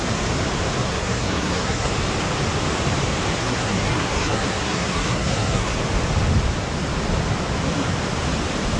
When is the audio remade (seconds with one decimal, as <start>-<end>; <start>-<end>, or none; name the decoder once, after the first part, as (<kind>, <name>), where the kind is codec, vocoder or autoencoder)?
0.9-1.9 (codec, SNAC); 3.4-5.8